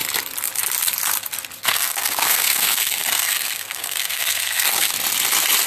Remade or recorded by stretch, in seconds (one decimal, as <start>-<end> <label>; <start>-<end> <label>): 0.0-1.7 recorded; 1.7-4.9 remade; 4.9-5.7 recorded